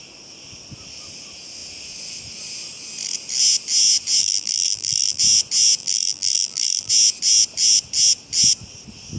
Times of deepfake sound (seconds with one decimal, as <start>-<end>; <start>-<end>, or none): 4.2-5.2; 5.8-6.9